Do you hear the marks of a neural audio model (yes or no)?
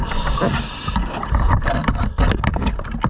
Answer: no